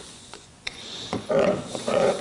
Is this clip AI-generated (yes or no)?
yes